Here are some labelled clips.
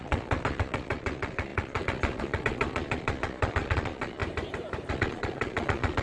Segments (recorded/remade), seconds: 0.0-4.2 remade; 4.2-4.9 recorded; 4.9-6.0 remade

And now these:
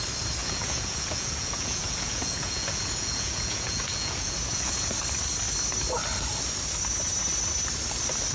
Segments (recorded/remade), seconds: 0.0-0.4 recorded; 0.4-4.9 remade; 4.9-8.3 recorded

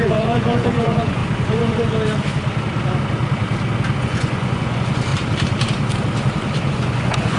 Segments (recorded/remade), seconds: 0.0-1.2 remade; 1.2-4.0 recorded; 4.0-5.1 remade; 5.1-6.7 recorded; 6.7-7.4 remade

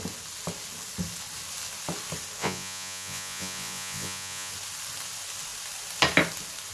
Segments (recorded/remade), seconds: 0.0-2.4 recorded; 2.4-4.5 remade; 4.5-6.7 recorded